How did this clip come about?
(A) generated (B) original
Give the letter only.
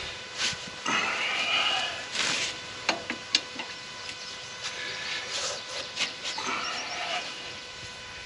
A